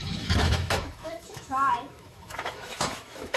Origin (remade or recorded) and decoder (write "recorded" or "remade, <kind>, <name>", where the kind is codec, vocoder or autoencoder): remade, autoencoder, DAC-VAE